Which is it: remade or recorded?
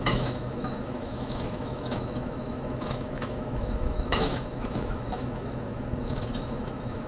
remade